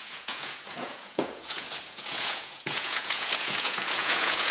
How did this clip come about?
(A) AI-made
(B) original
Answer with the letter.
A